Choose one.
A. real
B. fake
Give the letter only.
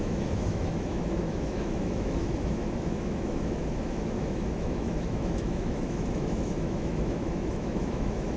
B